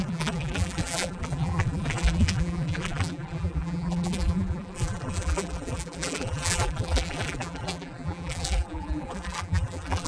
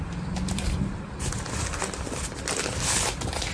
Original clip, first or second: second